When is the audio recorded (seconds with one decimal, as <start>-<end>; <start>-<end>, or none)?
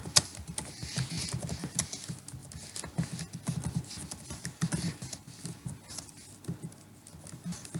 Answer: 0.0-7.8